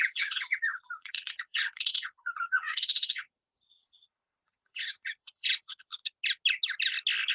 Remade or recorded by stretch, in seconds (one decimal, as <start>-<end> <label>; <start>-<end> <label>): 0.0-6.0 remade; 6.0-7.3 recorded